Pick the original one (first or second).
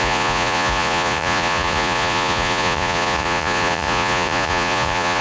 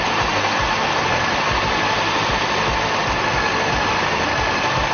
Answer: second